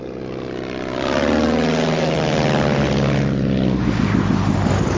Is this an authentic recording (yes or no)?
yes